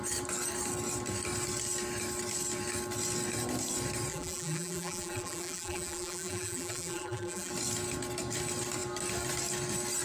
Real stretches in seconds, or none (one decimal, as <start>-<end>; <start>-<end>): 0.0-4.1; 7.5-10.0

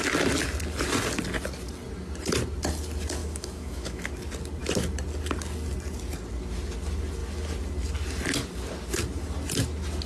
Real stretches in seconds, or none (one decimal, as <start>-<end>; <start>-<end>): 0.0-3.2; 4.1-10.1

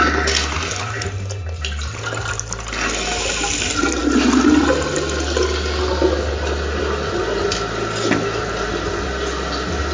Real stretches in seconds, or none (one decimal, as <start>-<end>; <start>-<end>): 0.0-9.9

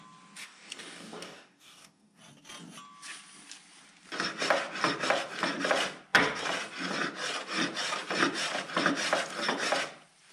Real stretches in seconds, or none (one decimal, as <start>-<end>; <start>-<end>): 0.0-0.4; 2.2-10.3

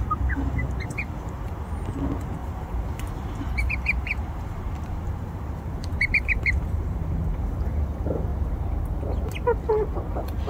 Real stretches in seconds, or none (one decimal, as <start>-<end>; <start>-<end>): 0.0-2.4; 7.5-8.3; 9.7-10.5

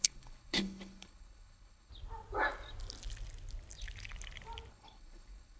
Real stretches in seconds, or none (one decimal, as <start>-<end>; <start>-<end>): 1.9-4.7